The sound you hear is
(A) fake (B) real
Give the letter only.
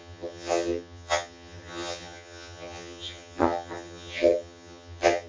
A